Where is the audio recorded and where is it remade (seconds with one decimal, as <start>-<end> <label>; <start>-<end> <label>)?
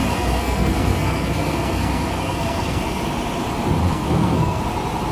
0.0-2.8 remade; 2.8-3.8 recorded; 3.8-4.6 remade; 4.6-5.1 recorded